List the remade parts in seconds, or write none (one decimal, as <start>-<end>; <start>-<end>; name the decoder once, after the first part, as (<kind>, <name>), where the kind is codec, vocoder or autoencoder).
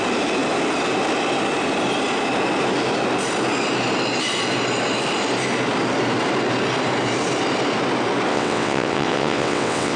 8.3-10.0 (vocoder, WaveNeXt)